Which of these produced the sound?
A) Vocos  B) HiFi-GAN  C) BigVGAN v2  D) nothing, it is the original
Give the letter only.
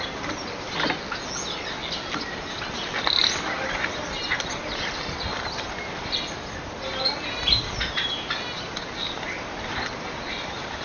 D